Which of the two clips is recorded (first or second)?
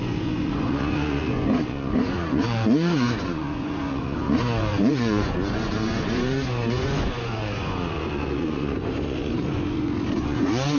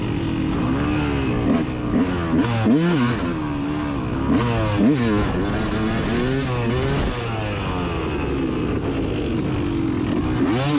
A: second